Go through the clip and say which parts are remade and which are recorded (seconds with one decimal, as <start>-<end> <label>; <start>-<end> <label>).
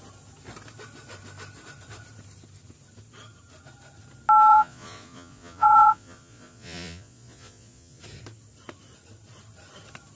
0.0-4.5 recorded; 4.5-8.0 remade; 8.0-10.2 recorded